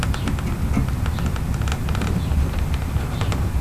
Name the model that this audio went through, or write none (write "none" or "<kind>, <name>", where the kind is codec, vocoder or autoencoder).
none